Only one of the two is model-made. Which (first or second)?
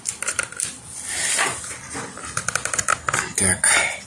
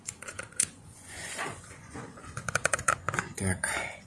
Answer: second